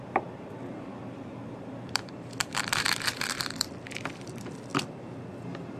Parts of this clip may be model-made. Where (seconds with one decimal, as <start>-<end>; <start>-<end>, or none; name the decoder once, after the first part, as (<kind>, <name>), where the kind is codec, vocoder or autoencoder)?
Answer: 0.9-3.7 (vocoder, BigVGAN v2)